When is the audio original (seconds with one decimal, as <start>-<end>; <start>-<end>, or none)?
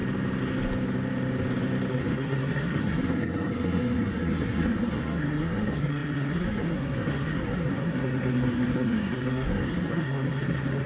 0.0-1.9